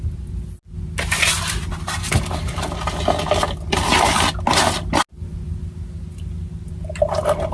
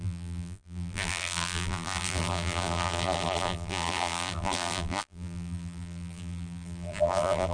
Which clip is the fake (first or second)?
second